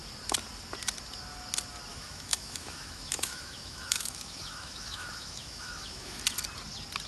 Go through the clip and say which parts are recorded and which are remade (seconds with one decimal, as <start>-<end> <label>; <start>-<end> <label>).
0.0-1.9 recorded; 1.9-6.2 remade; 6.2-7.1 recorded